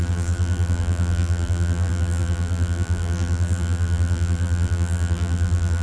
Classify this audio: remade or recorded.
remade